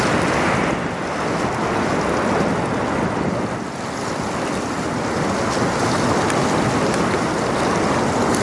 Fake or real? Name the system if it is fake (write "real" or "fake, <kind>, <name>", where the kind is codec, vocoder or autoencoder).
real